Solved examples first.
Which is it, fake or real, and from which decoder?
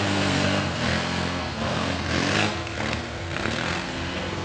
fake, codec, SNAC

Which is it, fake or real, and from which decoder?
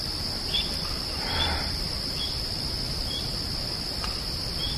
real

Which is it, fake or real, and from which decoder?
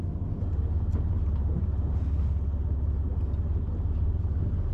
real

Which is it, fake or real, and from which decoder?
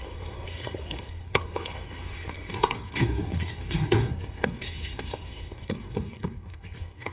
fake, codec, SNAC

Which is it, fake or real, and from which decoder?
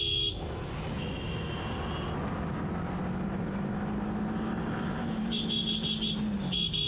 real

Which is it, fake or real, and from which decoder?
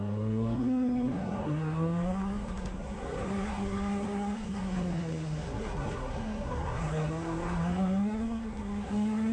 fake, codec, SNAC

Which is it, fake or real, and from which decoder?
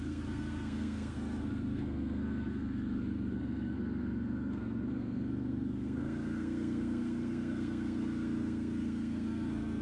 fake, codec, SNAC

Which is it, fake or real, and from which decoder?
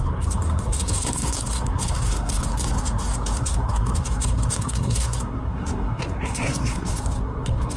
fake, codec, SNAC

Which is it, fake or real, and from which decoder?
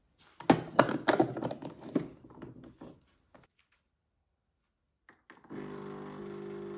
real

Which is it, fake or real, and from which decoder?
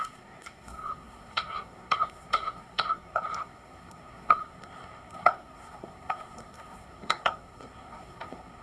fake, codec, SNAC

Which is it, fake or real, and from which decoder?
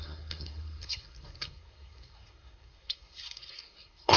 fake, codec, SNAC